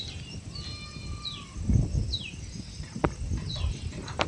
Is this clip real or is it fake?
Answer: real